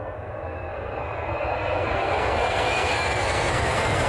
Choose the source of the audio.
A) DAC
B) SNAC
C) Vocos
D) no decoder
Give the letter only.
B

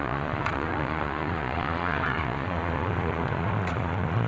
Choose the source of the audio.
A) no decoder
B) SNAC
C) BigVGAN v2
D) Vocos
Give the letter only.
D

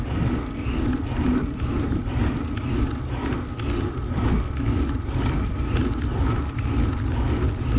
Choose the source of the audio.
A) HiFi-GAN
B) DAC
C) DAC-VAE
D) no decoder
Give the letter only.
D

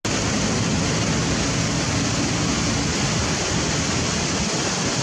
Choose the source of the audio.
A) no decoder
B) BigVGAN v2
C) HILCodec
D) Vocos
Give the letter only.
A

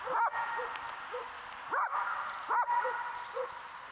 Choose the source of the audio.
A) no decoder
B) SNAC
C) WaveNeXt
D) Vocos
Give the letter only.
A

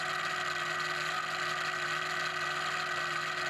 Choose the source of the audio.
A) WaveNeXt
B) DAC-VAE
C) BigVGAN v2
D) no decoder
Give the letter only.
D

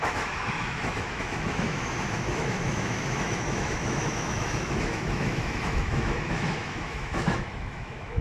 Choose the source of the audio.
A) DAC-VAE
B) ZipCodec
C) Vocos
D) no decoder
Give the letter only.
A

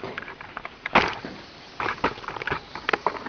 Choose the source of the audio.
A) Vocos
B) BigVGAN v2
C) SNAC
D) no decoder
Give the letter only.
B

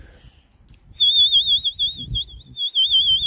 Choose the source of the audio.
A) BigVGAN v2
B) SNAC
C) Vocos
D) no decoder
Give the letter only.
D